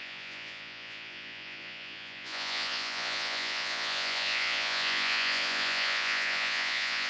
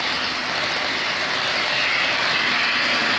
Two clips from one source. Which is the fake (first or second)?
first